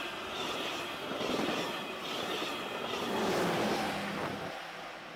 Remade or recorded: recorded